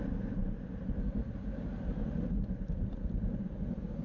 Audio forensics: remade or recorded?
recorded